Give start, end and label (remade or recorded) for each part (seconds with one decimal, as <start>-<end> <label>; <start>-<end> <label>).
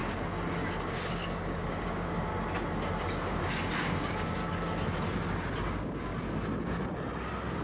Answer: 0.0-2.3 remade; 2.3-3.8 recorded; 3.8-4.4 remade; 4.4-5.6 recorded; 5.6-6.1 remade; 6.1-7.6 recorded